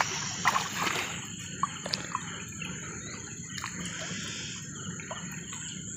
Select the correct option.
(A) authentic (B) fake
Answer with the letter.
A